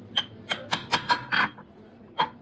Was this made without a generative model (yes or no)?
yes